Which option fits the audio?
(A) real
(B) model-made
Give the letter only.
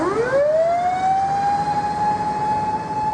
A